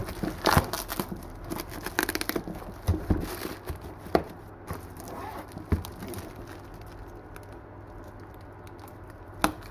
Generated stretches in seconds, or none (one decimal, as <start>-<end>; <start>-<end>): none

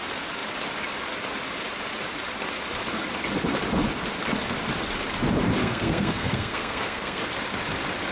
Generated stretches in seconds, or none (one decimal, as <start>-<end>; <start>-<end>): 5.6-7.2